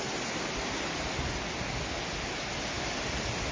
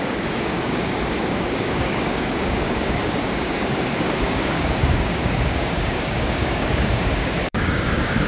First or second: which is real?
first